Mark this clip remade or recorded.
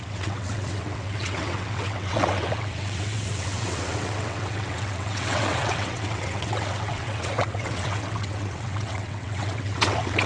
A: remade